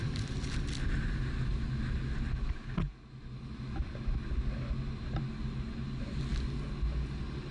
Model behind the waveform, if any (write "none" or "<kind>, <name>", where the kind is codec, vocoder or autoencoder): none